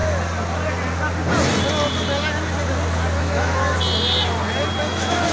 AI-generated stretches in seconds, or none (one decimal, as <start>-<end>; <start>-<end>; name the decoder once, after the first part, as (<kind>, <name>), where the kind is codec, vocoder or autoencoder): 3.2-3.6 (autoencoder, DAC-VAE); 4.8-5.3